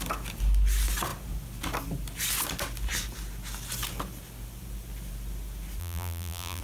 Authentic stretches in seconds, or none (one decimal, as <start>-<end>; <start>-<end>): 0.0-5.8